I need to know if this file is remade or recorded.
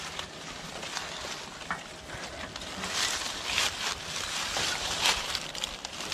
recorded